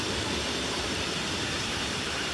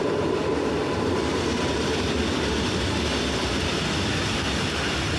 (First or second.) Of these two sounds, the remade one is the first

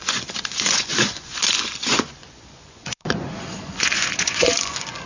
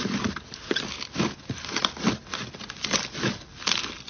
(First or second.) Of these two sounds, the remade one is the first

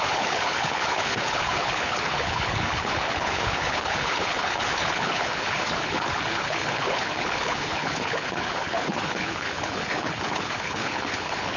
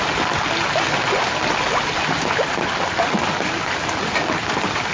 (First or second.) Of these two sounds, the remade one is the first